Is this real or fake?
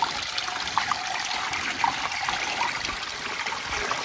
real